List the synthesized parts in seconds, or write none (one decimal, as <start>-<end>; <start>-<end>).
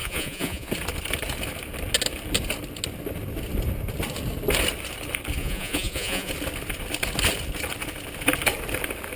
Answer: 0.0-0.7; 5.4-6.3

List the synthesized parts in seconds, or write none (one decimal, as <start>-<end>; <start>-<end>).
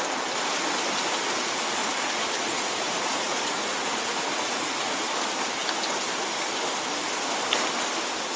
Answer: 1.8-5.0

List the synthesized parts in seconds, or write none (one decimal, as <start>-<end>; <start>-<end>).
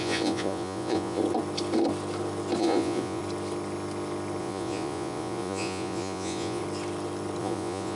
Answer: 0.0-1.2; 2.6-3.2; 4.4-6.6; 7.4-8.0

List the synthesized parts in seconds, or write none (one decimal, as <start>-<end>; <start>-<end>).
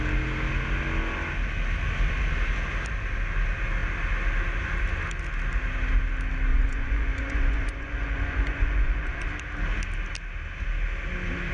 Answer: 6.5-9.3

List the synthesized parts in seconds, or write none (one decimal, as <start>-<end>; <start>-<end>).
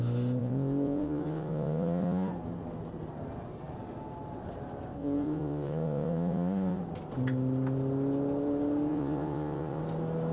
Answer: 0.4-2.3; 5.0-6.8; 8.9-9.8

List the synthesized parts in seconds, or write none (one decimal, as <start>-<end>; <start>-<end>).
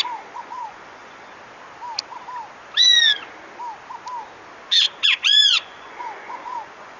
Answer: 0.0-1.3; 5.5-7.0